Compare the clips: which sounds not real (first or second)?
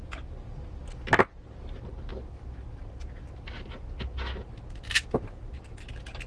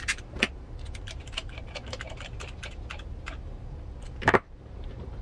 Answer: second